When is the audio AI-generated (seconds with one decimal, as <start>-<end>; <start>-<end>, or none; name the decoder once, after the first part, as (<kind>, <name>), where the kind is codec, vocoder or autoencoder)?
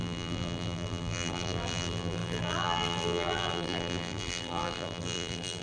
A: 0.0-5.6 (vocoder, BigVGAN v2)